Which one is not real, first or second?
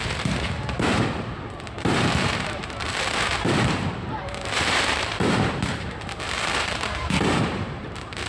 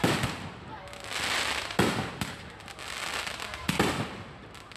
first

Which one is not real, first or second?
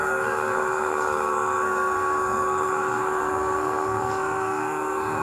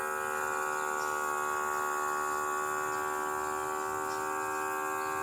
first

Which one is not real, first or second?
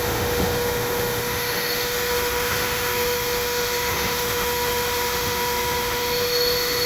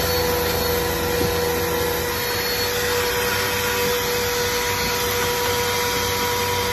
first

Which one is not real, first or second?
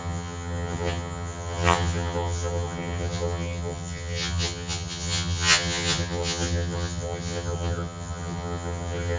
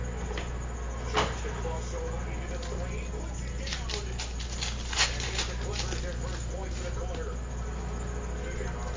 first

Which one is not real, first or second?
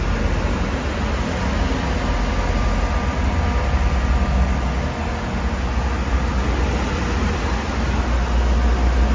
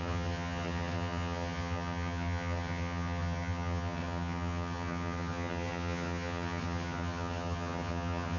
second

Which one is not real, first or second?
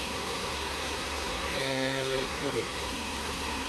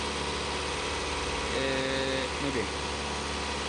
first